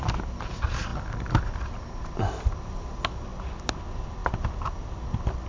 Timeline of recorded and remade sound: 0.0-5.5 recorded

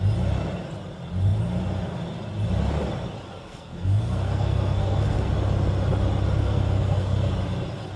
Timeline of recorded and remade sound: 0.0-3.3 recorded; 3.3-5.3 remade; 5.3-6.4 recorded; 6.4-7.3 remade; 7.3-8.0 recorded

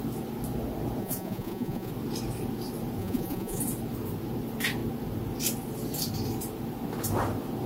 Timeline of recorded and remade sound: 0.0-1.0 recorded; 1.0-1.9 remade; 1.9-3.0 recorded; 3.0-3.6 remade; 3.6-7.7 recorded

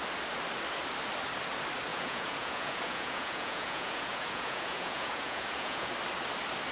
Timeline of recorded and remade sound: 0.0-1.9 recorded; 1.9-5.9 remade; 5.9-6.7 recorded

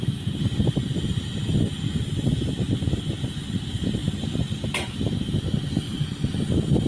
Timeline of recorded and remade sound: 0.0-6.9 recorded

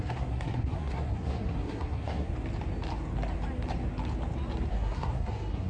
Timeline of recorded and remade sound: 0.0-2.3 remade; 2.3-4.7 recorded; 4.7-5.7 remade